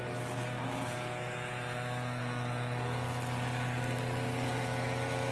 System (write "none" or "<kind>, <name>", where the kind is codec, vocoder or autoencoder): none